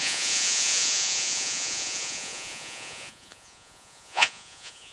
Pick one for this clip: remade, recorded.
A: remade